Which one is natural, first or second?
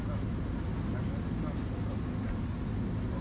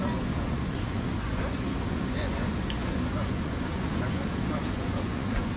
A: first